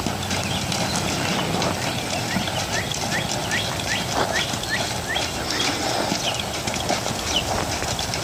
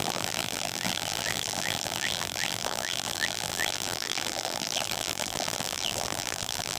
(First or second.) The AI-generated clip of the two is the second